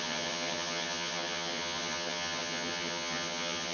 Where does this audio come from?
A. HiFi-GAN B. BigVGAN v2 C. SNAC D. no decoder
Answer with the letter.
A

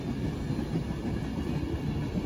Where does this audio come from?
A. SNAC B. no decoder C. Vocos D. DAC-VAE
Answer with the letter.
B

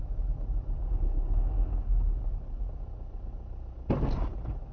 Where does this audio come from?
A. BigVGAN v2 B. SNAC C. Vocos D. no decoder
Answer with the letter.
D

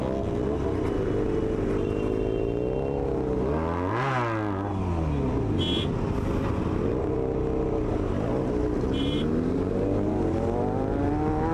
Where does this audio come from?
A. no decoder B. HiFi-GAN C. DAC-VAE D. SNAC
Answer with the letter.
A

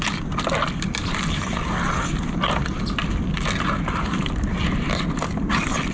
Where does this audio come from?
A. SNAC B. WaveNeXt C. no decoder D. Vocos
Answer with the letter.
C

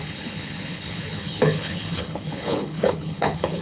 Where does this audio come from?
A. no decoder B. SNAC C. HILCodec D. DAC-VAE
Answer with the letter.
C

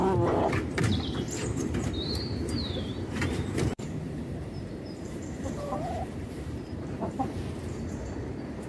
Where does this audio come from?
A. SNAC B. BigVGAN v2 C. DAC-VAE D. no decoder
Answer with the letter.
B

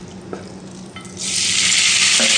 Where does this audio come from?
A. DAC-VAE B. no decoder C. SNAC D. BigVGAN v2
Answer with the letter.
B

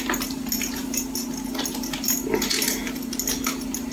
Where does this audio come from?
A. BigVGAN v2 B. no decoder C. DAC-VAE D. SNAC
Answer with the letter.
B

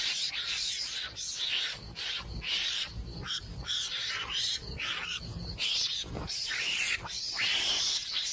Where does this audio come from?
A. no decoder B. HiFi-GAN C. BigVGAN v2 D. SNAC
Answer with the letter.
C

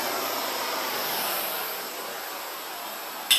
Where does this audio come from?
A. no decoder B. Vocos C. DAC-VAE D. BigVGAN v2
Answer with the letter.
A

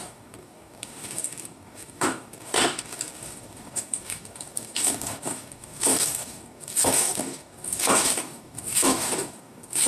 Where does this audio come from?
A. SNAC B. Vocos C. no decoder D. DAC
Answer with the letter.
D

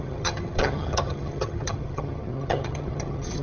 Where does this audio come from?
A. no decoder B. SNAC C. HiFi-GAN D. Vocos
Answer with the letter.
C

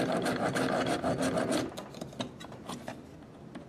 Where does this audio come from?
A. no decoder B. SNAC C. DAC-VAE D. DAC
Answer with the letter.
A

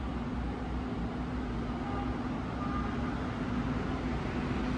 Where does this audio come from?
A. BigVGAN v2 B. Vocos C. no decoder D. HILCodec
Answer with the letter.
C